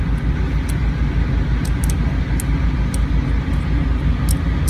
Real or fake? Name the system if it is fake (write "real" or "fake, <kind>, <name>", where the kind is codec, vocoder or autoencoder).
real